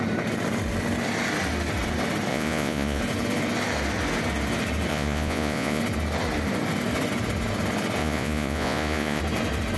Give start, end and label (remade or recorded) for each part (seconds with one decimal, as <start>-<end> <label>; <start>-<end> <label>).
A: 0.0-2.3 recorded; 2.3-3.0 remade; 3.0-4.9 recorded; 4.9-5.8 remade; 5.8-8.0 recorded; 8.0-9.2 remade; 9.2-9.8 recorded